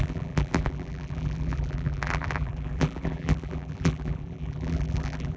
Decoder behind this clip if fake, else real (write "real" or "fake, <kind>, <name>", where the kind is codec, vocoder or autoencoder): fake, vocoder, BigVGAN v2